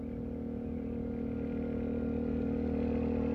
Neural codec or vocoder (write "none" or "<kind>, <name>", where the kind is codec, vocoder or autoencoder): none